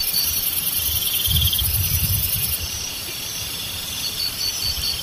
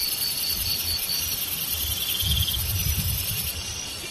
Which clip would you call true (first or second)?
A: second